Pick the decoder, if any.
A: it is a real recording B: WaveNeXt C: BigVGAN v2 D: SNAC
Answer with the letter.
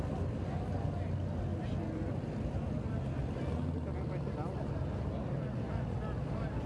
A